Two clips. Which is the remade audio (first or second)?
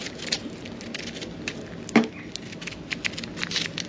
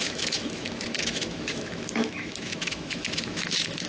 second